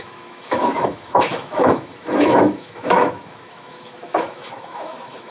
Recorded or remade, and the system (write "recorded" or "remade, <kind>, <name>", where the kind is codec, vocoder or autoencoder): remade, autoencoder, DAC-VAE